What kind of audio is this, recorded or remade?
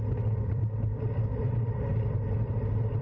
remade